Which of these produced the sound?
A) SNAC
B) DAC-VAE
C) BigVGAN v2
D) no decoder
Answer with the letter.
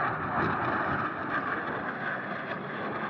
D